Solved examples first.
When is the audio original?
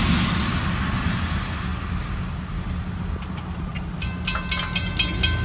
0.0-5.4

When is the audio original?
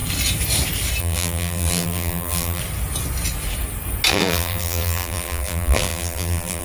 0.0-1.0; 2.6-4.1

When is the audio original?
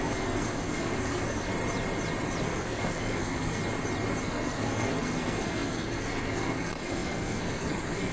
1.5-2.4; 3.6-4.2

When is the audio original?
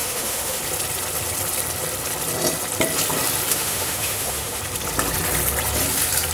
0.6-3.5; 4.6-6.3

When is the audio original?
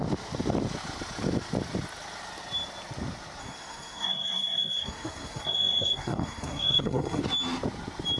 0.0-3.4; 7.2-8.2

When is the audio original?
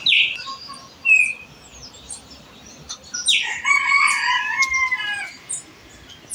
0.0-1.7; 5.5-6.3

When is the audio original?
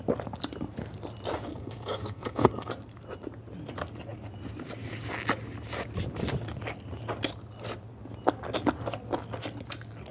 0.0-1.5; 2.7-10.1